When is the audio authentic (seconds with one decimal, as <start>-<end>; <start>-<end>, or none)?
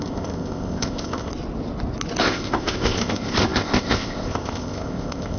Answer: 1.3-2.2